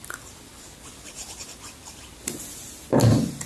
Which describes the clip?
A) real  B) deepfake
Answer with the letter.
A